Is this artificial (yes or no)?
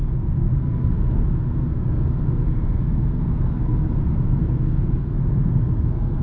yes